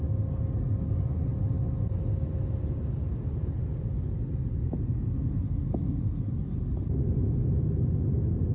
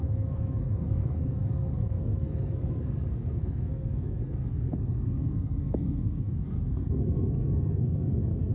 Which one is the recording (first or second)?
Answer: first